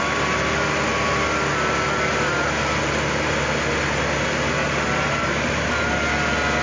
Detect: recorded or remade recorded